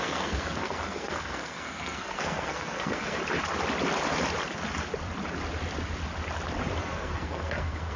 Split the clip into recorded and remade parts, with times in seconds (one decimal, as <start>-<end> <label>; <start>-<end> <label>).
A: 0.0-3.2 remade; 3.2-6.8 recorded; 6.8-8.0 remade